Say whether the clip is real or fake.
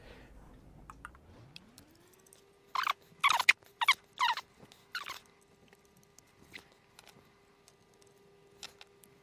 real